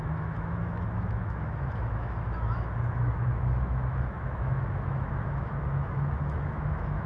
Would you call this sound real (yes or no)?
no